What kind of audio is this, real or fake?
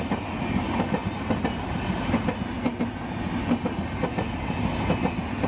real